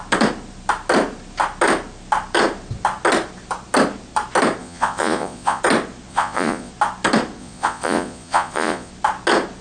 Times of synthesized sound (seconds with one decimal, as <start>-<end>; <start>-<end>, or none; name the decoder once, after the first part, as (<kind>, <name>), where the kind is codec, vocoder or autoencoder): 4.6-5.6 (vocoder, Vocos); 6.1-6.7; 7.4-8.9